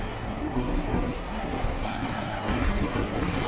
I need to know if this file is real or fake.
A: fake